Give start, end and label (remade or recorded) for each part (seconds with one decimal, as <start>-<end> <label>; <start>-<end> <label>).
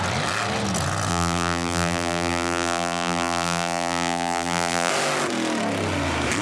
0.0-1.1 recorded; 1.1-4.9 remade; 4.9-6.4 recorded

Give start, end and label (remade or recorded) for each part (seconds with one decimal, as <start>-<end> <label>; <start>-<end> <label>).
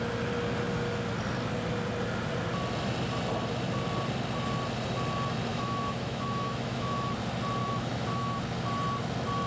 0.0-5.5 recorded; 5.5-7.1 remade; 7.1-7.6 recorded; 7.6-8.4 remade; 8.4-9.5 recorded